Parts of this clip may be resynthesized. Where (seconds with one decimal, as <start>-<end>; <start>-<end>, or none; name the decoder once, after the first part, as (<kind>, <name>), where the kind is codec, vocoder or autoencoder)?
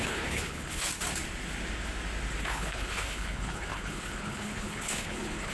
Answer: 0.0-0.9 (codec, HILCodec); 2.4-5.5